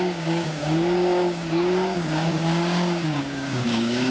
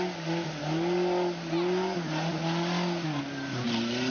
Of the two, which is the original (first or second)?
second